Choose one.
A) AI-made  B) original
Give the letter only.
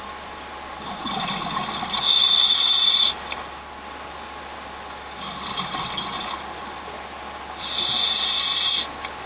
B